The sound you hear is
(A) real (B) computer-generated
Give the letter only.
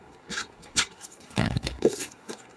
B